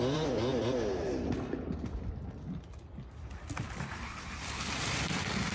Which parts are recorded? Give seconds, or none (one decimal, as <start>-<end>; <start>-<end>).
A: 0.5-3.8